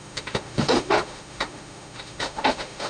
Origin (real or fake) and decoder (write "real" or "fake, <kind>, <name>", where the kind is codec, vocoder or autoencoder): fake, autoencoder, DAC-VAE